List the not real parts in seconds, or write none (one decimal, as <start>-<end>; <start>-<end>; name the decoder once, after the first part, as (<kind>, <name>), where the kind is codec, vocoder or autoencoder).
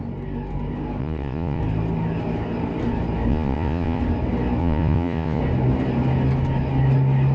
1.0-1.6 (vocoder, Vocos); 3.3-4.0; 4.6-5.4